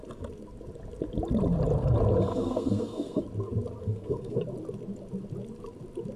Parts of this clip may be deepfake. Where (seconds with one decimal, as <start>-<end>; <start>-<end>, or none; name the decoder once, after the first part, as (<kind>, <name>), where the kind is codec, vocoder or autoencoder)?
2.3-3.2 (codec, SNAC); 3.8-4.4